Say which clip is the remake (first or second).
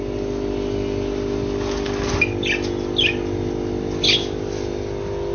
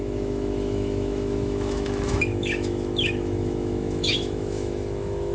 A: second